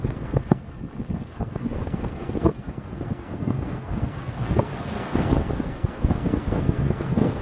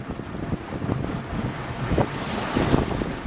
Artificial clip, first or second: first